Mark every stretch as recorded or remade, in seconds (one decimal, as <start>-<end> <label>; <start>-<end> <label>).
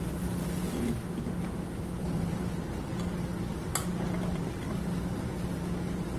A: 0.0-2.0 recorded; 2.0-2.5 remade; 2.5-6.2 recorded